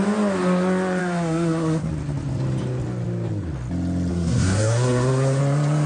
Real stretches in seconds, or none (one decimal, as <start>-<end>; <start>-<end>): 0.0-1.0; 1.9-4.1; 5.4-5.9